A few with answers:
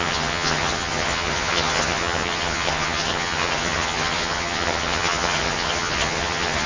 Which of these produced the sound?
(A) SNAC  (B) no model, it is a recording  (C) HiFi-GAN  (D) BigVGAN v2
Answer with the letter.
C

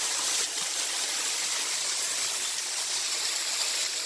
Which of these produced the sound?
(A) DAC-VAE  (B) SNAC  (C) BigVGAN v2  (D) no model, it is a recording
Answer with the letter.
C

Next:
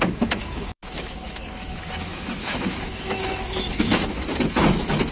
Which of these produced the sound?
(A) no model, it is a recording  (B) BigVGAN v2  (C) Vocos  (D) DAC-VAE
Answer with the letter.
D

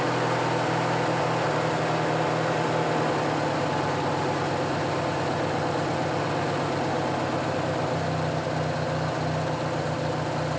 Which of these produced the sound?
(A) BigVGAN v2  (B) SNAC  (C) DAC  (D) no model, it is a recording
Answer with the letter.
D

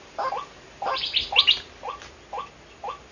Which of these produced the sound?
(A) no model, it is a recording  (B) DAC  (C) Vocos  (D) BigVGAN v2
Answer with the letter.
A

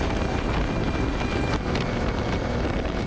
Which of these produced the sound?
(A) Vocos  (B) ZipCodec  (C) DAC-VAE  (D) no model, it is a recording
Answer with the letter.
D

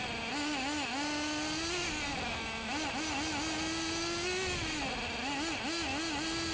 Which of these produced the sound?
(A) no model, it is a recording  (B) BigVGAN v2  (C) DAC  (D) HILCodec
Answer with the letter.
A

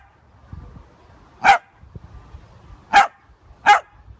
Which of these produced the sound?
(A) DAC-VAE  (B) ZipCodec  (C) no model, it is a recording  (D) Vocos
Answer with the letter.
C